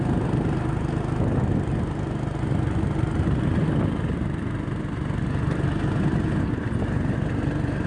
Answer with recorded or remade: recorded